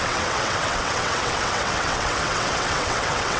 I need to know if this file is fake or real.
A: fake